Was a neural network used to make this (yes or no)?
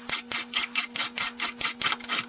no